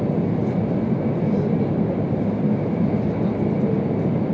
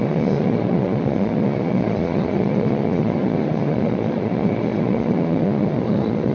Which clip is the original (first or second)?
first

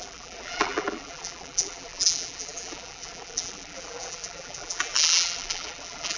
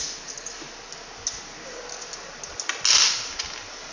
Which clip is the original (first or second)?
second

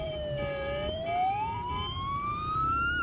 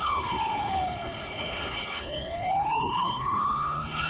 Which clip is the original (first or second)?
first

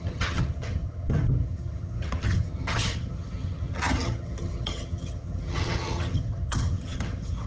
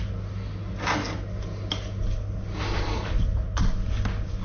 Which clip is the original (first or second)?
second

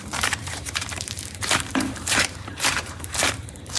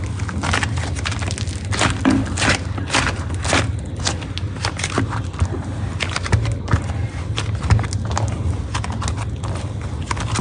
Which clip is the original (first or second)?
second